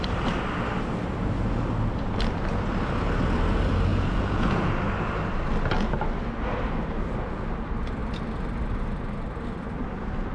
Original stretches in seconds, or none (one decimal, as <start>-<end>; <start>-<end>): 0.0-3.9; 4.7-10.3